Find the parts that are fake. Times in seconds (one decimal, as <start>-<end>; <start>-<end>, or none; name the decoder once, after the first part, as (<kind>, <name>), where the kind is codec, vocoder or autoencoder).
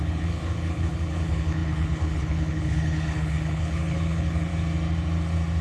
0.0-4.5 (codec, HILCodec)